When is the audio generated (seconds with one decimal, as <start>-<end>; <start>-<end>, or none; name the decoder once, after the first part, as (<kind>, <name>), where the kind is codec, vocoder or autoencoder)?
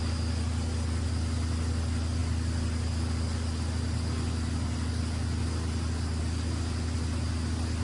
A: none